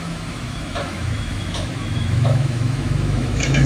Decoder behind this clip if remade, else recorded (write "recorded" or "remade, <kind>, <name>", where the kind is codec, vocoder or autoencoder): remade, autoencoder, DAC-VAE